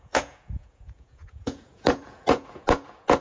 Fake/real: fake